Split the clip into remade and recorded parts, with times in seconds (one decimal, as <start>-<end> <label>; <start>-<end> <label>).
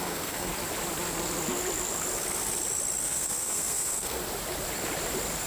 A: 0.0-0.5 remade; 0.5-3.0 recorded; 3.0-4.2 remade; 4.2-5.5 recorded